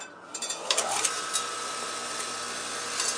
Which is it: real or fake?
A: real